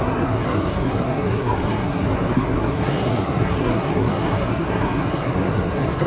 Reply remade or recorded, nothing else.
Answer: remade